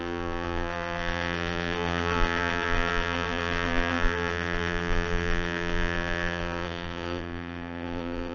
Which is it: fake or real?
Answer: fake